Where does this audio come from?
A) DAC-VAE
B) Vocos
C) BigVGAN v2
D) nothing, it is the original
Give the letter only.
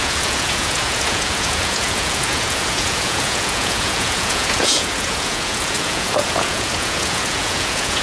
B